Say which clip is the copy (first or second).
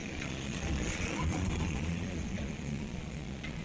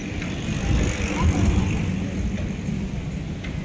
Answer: first